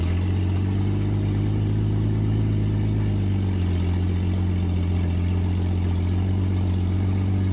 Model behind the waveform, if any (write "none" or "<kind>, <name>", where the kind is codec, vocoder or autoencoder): none